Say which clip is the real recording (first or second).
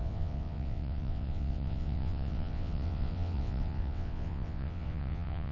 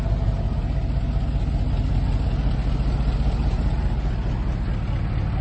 second